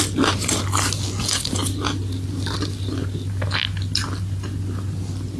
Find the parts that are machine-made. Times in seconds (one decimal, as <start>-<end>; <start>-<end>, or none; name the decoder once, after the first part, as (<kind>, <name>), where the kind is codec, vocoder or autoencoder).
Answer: none